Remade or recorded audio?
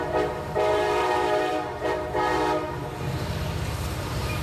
remade